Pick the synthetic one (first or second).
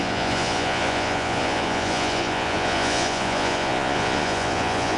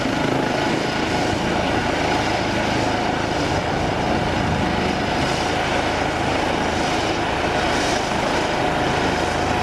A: first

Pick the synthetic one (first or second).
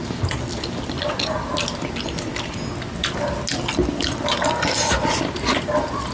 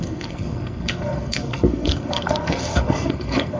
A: second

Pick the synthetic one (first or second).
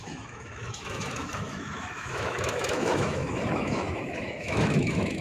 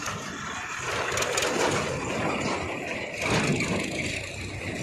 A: first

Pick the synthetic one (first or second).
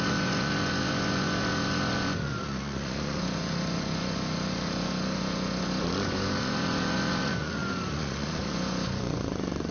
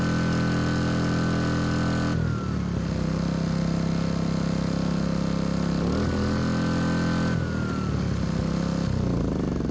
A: first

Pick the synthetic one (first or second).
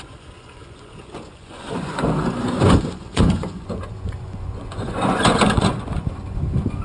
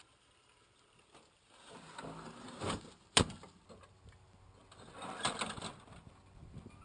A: first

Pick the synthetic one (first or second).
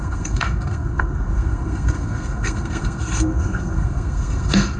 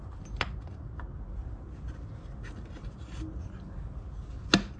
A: first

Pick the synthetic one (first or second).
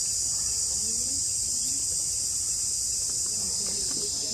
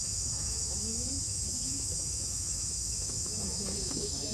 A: second